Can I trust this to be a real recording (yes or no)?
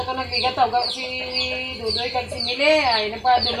yes